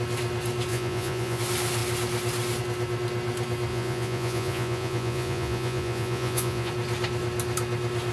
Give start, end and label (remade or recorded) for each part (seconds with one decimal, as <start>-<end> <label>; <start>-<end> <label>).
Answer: 0.0-0.7 recorded; 0.7-1.4 remade; 1.4-3.7 recorded; 3.7-6.7 remade; 6.7-8.1 recorded